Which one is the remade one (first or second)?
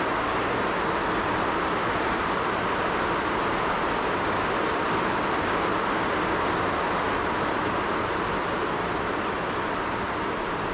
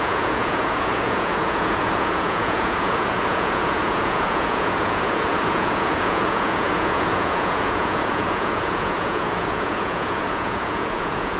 second